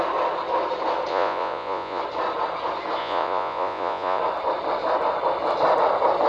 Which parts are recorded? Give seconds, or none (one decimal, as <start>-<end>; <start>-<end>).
0.0-1.1; 2.0-3.0; 4.2-6.3